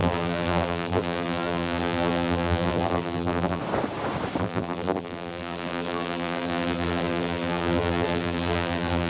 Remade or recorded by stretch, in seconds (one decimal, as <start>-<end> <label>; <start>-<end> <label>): 0.0-3.6 remade; 3.6-4.4 recorded; 4.4-9.1 remade